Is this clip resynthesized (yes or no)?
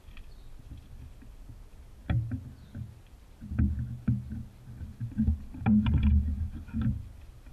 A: no